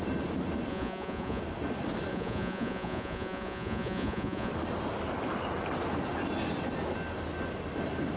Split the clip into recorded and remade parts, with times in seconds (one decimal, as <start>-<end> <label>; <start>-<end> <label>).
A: 0.0-0.7 recorded; 0.7-1.4 remade; 1.4-2.1 recorded; 2.1-4.5 remade; 4.5-8.2 recorded

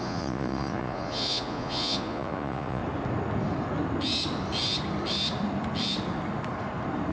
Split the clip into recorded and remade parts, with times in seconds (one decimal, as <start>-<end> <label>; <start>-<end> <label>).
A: 0.0-2.8 remade; 2.8-7.1 recorded

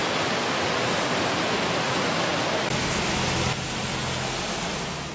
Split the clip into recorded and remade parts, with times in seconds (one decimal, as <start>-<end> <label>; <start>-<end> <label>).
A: 0.0-5.1 recorded

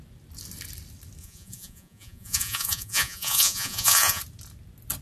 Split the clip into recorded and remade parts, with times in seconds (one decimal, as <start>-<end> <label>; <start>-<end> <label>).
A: 0.0-1.2 recorded; 1.2-4.2 remade; 4.2-5.0 recorded

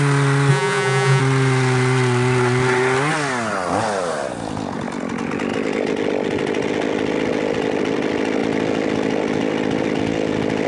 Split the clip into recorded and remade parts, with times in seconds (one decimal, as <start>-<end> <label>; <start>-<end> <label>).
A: 0.0-0.5 recorded; 0.5-1.2 remade; 1.2-10.7 recorded